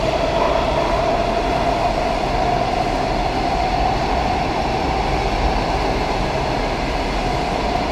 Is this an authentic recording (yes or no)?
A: yes